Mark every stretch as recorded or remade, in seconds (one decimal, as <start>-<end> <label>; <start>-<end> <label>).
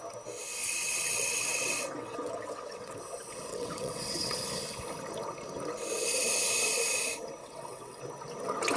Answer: 0.0-0.6 recorded; 0.6-3.0 remade; 3.0-3.5 recorded; 3.5-4.4 remade; 4.4-7.4 recorded; 7.4-8.0 remade; 8.0-8.8 recorded